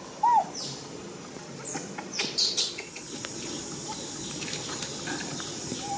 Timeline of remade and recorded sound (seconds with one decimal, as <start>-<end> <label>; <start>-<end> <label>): 0.0-6.0 recorded